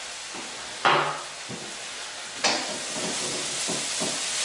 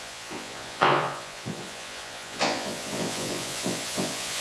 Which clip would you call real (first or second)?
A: first